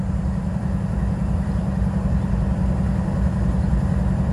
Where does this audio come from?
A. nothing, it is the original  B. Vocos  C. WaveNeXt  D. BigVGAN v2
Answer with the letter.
D